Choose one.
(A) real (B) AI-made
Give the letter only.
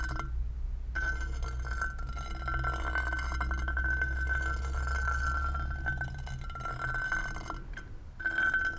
A